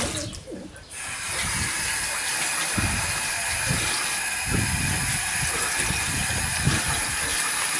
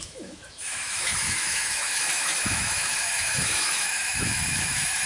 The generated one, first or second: second